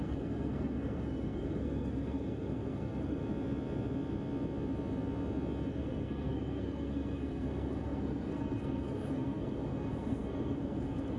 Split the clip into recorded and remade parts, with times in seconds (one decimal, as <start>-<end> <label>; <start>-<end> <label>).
0.0-3.2 remade; 3.2-5.7 recorded; 5.7-11.2 remade